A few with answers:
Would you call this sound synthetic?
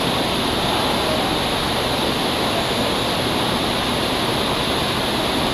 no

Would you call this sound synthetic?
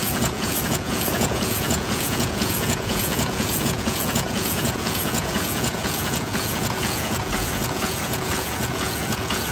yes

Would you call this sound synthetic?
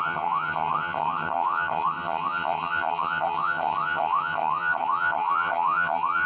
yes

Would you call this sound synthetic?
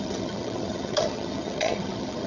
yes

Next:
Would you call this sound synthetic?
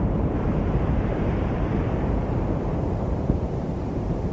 yes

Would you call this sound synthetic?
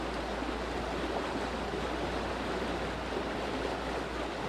no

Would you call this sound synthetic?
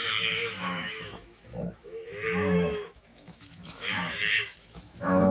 yes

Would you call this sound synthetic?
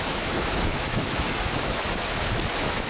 yes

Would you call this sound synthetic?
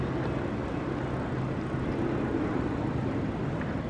no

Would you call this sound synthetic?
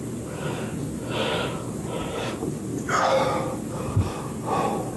no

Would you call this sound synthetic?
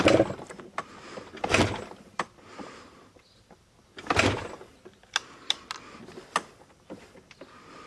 no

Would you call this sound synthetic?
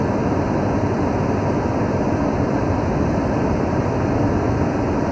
no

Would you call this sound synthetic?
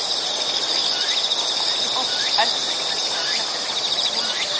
no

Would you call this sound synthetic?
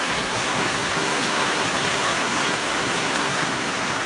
yes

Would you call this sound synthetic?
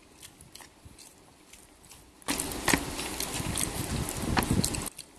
no